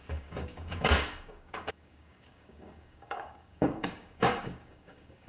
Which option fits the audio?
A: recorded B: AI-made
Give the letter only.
B